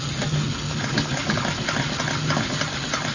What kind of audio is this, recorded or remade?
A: recorded